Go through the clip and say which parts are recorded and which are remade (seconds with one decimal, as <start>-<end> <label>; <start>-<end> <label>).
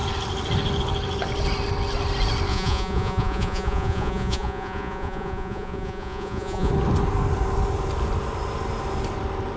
0.0-2.5 recorded; 2.5-6.7 remade; 6.7-9.6 recorded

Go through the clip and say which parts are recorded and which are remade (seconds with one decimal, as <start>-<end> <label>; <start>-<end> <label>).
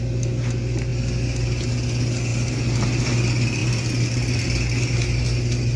0.0-5.8 recorded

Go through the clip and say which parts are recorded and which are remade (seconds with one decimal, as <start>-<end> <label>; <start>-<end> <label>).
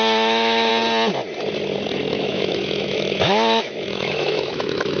0.0-0.7 remade; 0.7-2.1 recorded; 2.1-5.0 remade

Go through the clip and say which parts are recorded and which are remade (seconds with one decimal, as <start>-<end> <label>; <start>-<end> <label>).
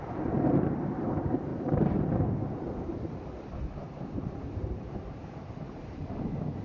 0.0-1.5 recorded; 1.5-3.0 remade; 3.0-3.8 recorded; 3.8-5.2 remade; 5.2-6.6 recorded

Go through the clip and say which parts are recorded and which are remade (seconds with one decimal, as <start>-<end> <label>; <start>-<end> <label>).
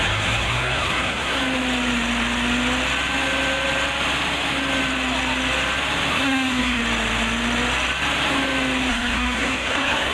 0.0-1.4 remade; 1.4-6.1 recorded; 6.1-6.8 remade; 6.8-8.9 recorded; 8.9-10.1 remade